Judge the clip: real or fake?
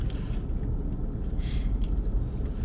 real